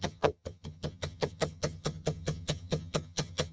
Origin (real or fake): fake